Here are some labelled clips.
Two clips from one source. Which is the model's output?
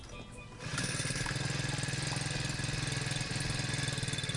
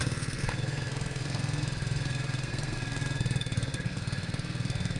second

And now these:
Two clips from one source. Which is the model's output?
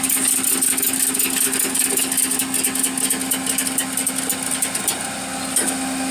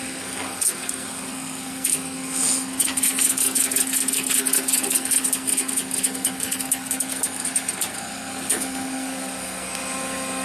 second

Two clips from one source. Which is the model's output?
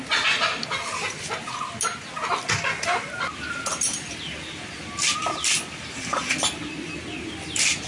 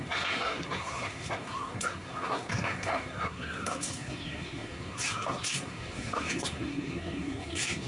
second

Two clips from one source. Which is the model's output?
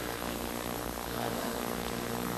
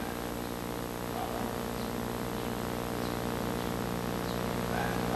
first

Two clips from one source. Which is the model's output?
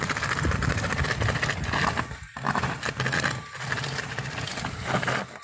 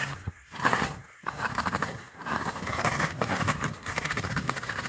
second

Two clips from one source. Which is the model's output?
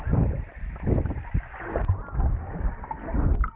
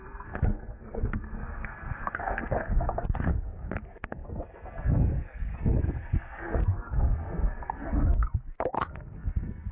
second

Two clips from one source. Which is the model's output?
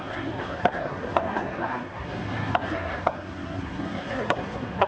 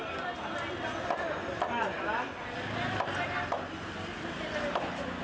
first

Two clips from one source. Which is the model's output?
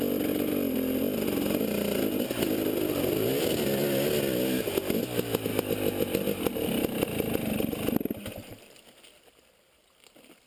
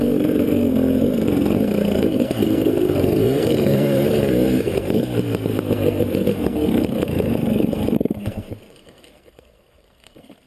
second